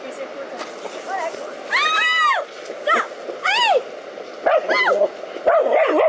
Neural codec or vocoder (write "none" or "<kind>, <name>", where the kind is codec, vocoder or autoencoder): none